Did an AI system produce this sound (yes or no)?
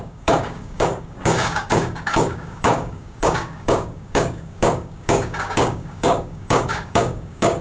yes